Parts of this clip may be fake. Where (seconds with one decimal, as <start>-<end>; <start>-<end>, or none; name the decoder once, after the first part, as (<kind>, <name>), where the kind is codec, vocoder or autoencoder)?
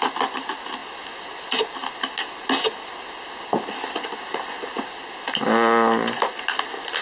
none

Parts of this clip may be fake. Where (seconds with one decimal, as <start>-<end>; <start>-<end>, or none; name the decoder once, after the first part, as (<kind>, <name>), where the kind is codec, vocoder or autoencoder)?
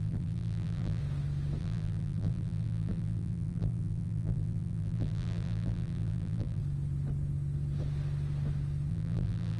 0.0-1.0 (vocoder, BigVGAN v2); 1.6-6.6; 8.9-9.6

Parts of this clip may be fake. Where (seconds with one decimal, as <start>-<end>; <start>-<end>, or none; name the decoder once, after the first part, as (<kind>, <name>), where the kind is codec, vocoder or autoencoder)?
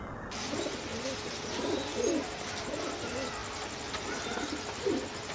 3.4-4.8 (vocoder, BigVGAN v2)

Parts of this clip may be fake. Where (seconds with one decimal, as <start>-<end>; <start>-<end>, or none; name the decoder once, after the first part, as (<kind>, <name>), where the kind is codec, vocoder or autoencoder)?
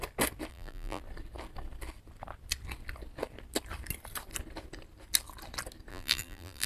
0.5-1.0 (vocoder, BigVGAN v2); 5.9-6.7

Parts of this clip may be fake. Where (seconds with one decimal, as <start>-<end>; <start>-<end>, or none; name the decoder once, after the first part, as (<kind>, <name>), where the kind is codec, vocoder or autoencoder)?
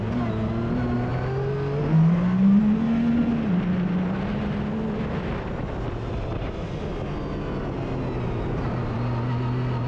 none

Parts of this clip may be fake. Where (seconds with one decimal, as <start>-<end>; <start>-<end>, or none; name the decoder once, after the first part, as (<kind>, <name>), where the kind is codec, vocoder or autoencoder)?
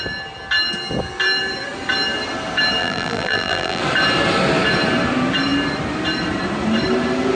2.8-3.8 (vocoder, BigVGAN v2)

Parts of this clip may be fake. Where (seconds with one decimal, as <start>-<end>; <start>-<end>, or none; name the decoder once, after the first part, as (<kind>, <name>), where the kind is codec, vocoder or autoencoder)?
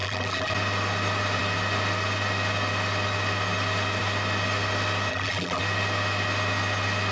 0.0-0.5 (vocoder, BigVGAN v2); 5.1-5.6